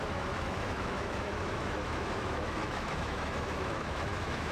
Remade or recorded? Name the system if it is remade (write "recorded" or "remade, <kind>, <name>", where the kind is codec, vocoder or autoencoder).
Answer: remade, autoencoder, DAC-VAE